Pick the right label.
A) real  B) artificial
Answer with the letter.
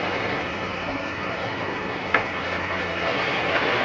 B